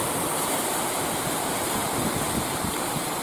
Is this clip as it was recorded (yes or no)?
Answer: yes